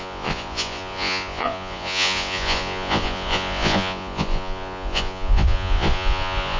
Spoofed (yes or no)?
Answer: yes